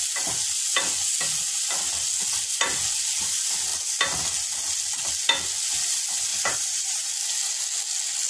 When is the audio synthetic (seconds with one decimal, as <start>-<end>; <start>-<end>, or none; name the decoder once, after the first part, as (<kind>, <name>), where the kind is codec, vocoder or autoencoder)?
6.3-7.1 (vocoder, BigVGAN v2)